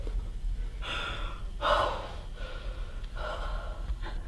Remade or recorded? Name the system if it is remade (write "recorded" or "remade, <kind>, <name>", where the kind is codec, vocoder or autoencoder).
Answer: recorded